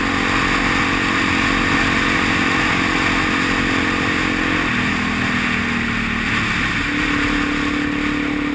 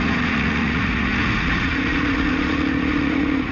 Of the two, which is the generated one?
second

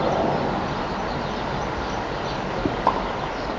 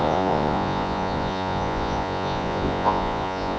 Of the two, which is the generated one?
second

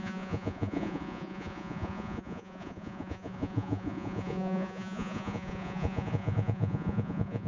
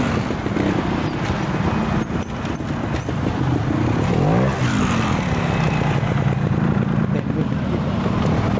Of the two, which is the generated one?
first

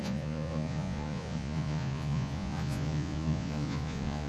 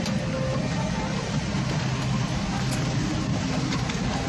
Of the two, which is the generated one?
first